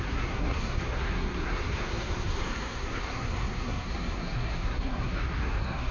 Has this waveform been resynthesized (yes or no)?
yes